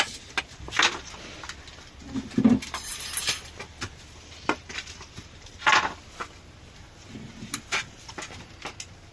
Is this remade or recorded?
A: recorded